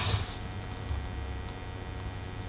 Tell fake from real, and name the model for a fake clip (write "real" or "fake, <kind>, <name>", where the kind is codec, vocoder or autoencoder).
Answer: real